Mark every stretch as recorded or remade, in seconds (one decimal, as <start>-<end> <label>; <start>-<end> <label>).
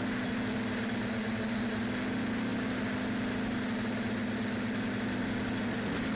0.0-6.2 recorded